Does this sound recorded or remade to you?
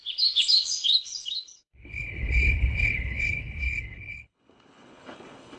remade